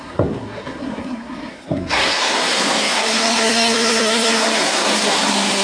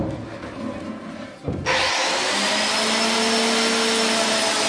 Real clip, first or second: second